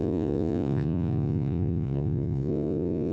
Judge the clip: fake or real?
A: fake